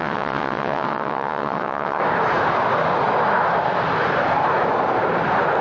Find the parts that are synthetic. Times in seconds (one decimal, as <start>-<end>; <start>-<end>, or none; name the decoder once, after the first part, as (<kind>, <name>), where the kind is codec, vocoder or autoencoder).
0.0-2.0 (vocoder, WaveNeXt)